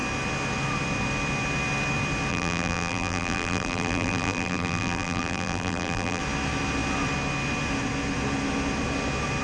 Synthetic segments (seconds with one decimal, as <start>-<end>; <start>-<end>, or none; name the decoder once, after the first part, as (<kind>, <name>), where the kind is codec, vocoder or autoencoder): 2.3-6.2 (vocoder, BigVGAN v2)